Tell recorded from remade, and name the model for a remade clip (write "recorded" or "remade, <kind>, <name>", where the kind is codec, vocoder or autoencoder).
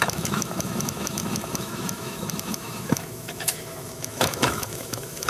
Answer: remade, autoencoder, DAC-VAE